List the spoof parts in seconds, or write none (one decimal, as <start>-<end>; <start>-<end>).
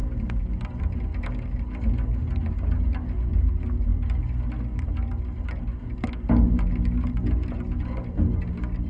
none